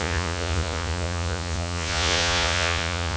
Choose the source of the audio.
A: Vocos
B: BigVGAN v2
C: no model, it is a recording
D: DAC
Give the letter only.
A